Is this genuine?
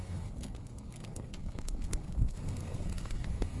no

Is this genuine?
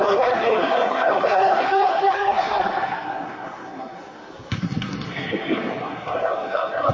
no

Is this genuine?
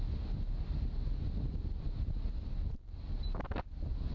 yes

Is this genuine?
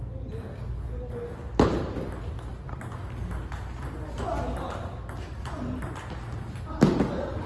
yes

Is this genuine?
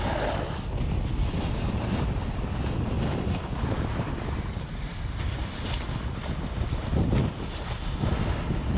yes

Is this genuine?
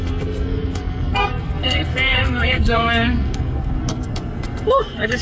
no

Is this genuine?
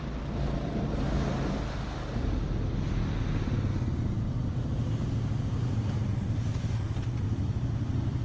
yes